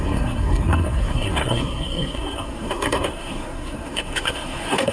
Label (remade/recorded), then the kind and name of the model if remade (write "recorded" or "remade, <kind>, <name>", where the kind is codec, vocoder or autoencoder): remade, codec, SNAC